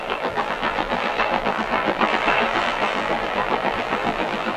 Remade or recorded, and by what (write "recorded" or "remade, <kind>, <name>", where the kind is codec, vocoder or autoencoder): remade, vocoder, BigVGAN v2